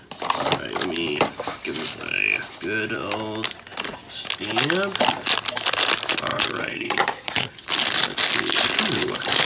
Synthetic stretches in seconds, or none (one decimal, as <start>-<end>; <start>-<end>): 6.3-7.5